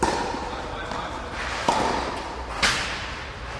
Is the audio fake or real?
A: real